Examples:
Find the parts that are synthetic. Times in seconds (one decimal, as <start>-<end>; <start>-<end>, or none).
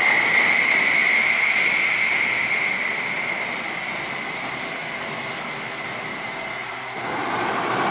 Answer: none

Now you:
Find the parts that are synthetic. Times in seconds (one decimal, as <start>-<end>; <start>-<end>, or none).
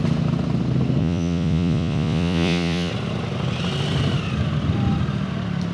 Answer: 1.0-2.9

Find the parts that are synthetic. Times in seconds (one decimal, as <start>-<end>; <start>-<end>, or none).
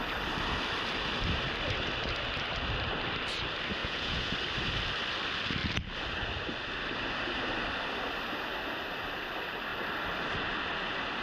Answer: 3.8-4.3